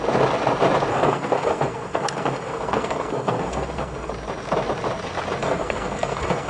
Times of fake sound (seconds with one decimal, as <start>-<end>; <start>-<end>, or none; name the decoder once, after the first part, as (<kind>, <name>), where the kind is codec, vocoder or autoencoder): 0.9-4.1 (codec, SNAC); 5.4-6.5